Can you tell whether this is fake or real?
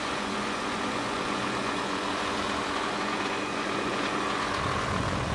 fake